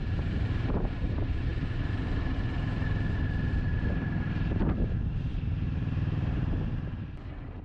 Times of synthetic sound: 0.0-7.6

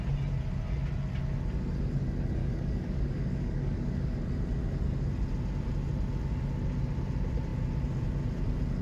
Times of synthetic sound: 2.4-4.2